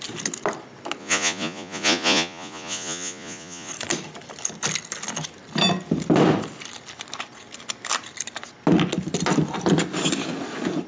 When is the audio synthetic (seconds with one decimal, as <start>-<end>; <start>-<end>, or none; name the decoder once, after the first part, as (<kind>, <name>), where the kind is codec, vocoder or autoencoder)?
1.0-3.7 (vocoder, Vocos)